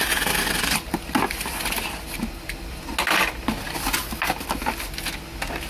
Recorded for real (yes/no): yes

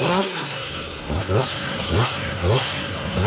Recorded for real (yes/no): no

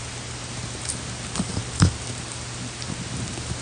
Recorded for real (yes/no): yes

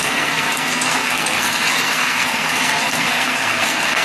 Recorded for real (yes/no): no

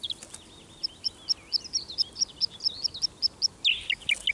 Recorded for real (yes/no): yes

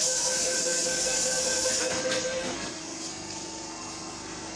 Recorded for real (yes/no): no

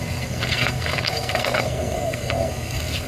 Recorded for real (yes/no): no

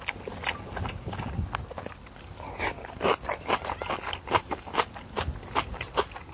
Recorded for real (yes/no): yes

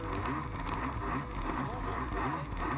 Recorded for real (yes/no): yes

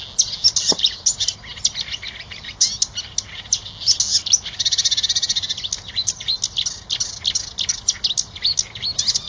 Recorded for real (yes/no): yes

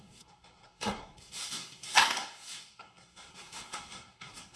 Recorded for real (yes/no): no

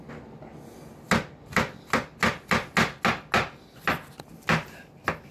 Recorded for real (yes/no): yes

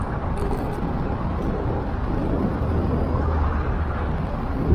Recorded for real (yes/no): yes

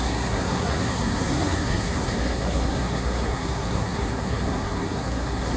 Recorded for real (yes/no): no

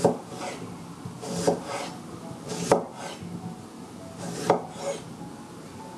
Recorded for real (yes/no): yes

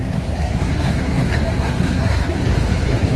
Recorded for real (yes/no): no